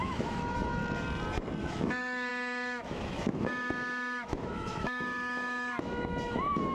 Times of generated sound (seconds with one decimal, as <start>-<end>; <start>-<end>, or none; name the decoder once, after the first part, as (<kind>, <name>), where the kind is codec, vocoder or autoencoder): 0.0-0.8 (autoencoder, DAC-VAE); 1.6-6.7